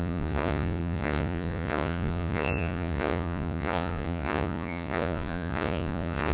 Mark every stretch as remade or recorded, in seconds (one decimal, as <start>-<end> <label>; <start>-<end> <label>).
0.0-6.3 remade